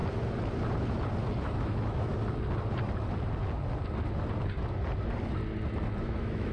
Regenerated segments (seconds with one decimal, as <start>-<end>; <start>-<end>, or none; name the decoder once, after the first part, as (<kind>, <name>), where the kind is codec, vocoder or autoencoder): 1.6-2.1 (autoencoder, DAC-VAE); 6.0-6.5